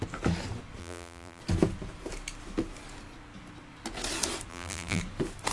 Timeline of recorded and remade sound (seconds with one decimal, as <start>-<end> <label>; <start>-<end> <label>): 0.0-0.8 recorded; 0.8-1.4 remade; 1.4-4.5 recorded; 4.5-5.0 remade; 5.0-5.5 recorded